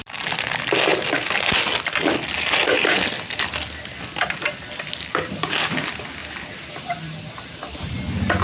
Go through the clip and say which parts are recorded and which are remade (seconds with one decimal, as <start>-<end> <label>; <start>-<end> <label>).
0.0-8.4 recorded